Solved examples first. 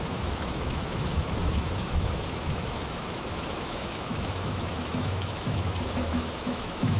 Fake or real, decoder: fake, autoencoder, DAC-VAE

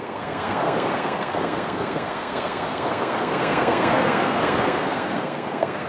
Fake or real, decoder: fake, codec, SNAC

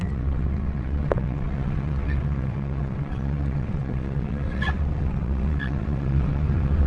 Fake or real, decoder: fake, vocoder, WaveNeXt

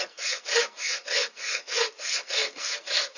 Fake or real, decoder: fake, codec, SNAC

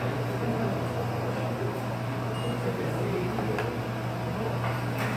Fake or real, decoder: real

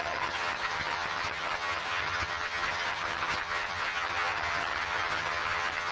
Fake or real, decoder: fake, vocoder, HiFi-GAN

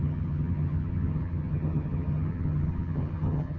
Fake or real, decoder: fake, vocoder, HiFi-GAN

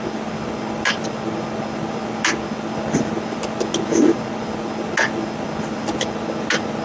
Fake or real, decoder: real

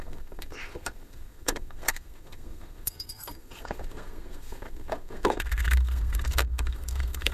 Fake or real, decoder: fake, codec, SNAC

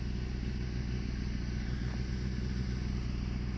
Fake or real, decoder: real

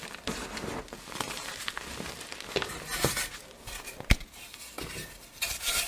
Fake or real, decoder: real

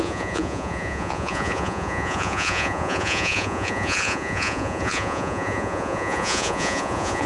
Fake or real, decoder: fake, vocoder, Vocos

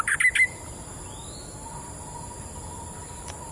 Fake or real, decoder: real